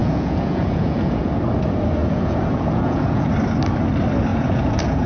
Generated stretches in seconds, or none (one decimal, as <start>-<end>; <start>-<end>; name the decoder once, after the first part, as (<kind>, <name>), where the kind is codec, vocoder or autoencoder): 0.0-1.3 (vocoder, Vocos); 2.0-3.3; 4.3-5.1